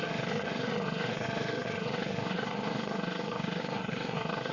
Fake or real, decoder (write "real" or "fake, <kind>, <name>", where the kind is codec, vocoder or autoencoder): fake, codec, SNAC